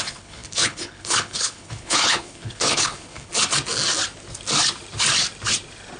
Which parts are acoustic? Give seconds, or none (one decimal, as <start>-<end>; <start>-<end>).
3.3-6.0